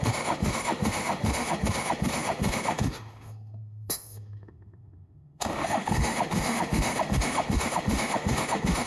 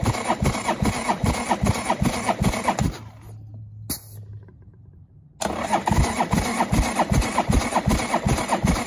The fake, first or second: first